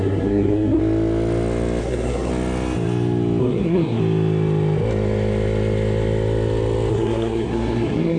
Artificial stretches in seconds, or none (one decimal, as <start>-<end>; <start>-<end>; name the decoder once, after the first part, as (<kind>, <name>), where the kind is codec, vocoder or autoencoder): 0.0-0.8 (codec, SNAC); 1.8-2.3; 3.4-4.0; 6.9-8.2